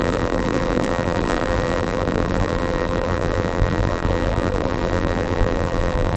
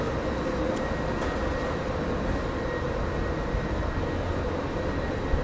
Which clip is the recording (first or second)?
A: second